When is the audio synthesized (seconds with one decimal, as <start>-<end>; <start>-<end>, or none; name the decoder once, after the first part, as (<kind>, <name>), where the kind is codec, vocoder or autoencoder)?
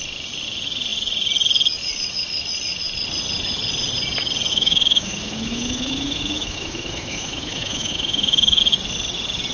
4.5-8.6 (autoencoder, DAC-VAE)